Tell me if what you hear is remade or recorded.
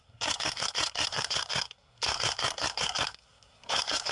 remade